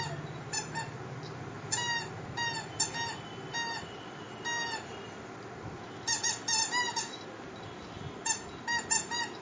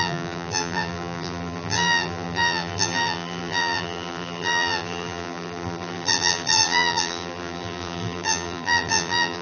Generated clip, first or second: second